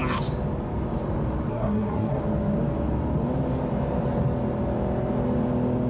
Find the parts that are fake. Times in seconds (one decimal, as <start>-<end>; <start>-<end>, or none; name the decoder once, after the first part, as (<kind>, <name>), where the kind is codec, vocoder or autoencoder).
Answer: 1.5-2.2 (codec, SNAC)